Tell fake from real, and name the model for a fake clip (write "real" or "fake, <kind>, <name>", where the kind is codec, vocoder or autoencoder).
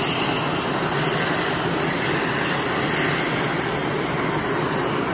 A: real